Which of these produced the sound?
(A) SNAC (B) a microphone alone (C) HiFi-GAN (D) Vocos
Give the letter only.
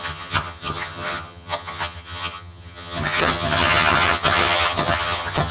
C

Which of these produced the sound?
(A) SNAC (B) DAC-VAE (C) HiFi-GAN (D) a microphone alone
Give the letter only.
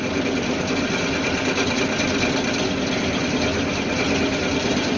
D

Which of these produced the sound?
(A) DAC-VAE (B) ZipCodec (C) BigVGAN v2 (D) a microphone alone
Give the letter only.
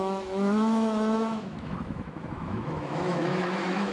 A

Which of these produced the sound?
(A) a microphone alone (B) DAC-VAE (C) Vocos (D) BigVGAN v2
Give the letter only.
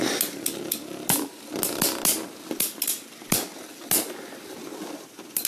A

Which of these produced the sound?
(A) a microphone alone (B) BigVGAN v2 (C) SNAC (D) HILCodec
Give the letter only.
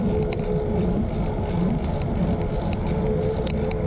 A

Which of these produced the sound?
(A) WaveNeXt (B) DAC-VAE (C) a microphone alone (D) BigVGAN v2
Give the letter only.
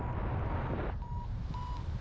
C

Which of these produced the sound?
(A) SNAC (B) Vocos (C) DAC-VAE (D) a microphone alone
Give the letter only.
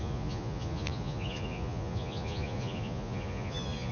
B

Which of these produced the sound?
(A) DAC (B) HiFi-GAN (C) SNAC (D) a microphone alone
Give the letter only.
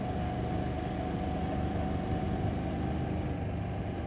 D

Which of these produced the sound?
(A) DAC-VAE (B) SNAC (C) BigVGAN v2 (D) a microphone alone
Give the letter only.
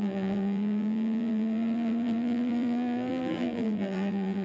C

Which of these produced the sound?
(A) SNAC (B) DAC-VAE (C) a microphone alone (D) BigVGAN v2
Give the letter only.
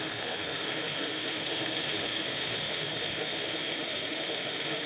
B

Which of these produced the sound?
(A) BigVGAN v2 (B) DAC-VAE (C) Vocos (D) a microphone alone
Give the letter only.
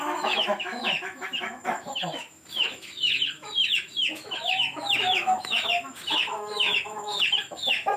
B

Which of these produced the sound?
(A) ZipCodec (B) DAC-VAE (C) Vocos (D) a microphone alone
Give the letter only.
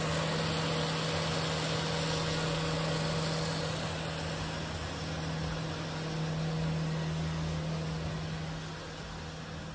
D